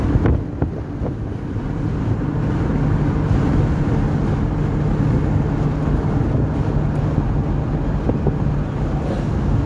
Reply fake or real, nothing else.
real